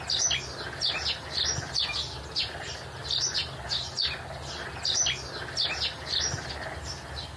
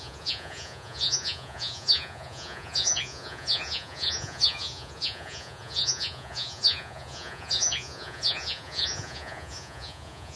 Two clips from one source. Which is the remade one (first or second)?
second